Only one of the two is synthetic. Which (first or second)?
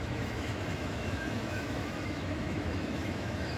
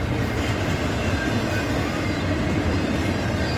first